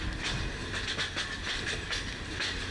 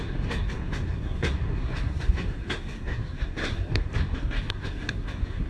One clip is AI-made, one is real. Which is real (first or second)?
first